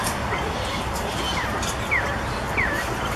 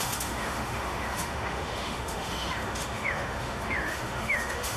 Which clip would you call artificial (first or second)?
second